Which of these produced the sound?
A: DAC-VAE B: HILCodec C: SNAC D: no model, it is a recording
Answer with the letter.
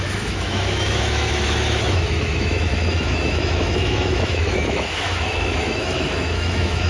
A